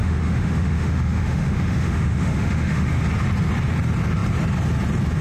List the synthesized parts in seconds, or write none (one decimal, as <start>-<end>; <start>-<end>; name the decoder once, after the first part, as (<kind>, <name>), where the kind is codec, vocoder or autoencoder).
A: 0.0-3.0 (autoencoder, DAC-VAE)

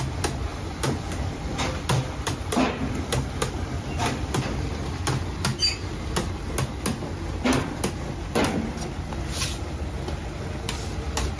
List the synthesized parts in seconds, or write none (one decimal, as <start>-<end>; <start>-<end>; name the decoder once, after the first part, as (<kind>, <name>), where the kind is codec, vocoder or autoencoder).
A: 0.5-4.3 (vocoder, BigVGAN v2)

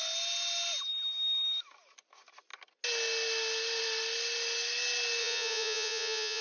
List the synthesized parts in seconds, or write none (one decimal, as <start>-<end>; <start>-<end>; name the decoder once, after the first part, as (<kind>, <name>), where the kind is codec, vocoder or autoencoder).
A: 5.2-6.4 (vocoder, Vocos)

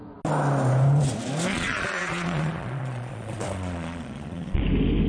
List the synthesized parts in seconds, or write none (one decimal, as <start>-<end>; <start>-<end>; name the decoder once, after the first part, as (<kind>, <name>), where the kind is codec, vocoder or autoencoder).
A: 1.5-4.6 (vocoder, Vocos)

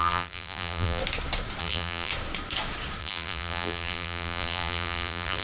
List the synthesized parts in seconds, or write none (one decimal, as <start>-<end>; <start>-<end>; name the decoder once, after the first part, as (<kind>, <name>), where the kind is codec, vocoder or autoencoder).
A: 0.0-1.0 (vocoder, BigVGAN v2); 1.6-2.1; 3.0-5.4

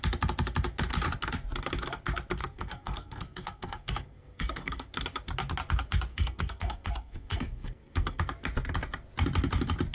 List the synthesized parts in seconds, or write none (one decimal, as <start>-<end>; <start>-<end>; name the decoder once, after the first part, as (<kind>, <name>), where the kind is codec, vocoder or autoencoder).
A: 2.4-4.9 (codec, SNAC); 6.1-8.2

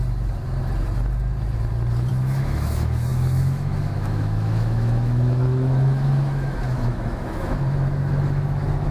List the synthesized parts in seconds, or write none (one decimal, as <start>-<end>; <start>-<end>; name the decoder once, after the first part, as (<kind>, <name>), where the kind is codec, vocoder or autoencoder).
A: 2.1-8.9 (autoencoder, DAC-VAE)

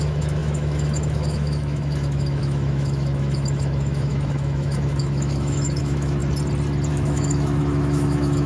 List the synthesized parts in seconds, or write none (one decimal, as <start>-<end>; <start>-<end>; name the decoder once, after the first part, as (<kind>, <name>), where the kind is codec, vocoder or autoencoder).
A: 0.0-6.2 (autoencoder, DAC-VAE); 6.9-8.5